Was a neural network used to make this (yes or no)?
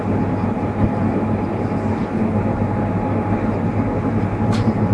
no